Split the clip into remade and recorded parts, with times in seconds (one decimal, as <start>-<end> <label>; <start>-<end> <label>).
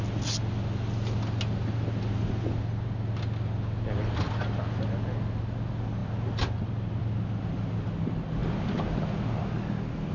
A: 0.0-10.1 recorded